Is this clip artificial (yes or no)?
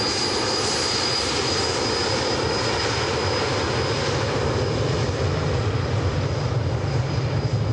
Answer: no